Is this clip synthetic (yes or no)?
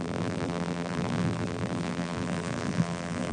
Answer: yes